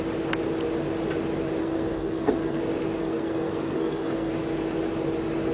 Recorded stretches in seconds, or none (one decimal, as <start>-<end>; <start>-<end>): 0.0-1.6; 2.6-3.0; 4.3-5.5